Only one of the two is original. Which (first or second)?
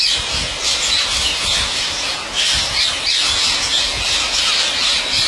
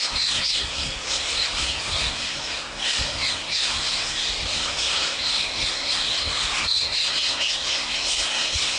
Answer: first